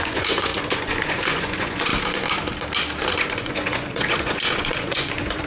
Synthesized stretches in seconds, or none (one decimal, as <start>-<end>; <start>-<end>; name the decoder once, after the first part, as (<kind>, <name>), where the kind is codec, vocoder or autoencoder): 0.0-1.9 (vocoder, Vocos); 3.0-5.5